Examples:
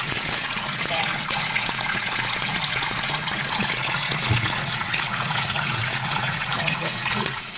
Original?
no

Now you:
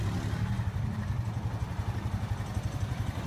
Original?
yes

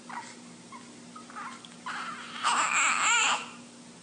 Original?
no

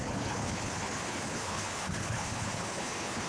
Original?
no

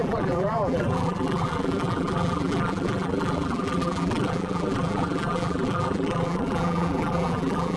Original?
no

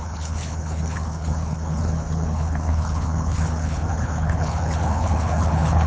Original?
no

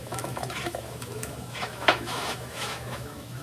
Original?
no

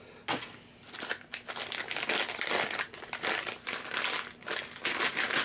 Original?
yes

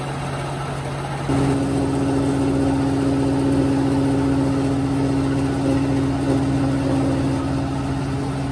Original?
yes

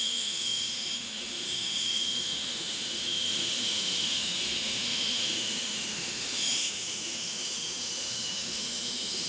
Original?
no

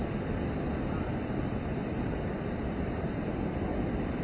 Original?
yes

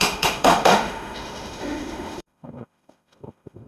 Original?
no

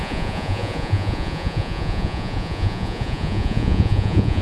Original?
no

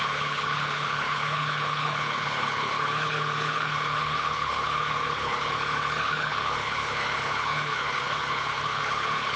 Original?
no